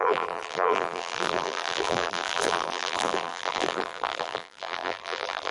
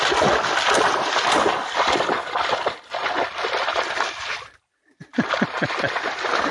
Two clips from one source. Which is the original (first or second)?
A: second